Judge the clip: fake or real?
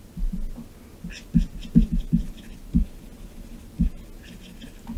real